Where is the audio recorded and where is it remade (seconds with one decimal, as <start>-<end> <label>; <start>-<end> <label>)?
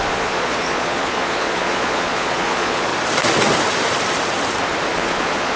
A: 0.0-2.9 remade; 2.9-4.9 recorded; 4.9-5.6 remade